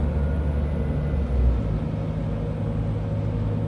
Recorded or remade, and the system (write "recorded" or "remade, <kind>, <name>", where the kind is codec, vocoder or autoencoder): recorded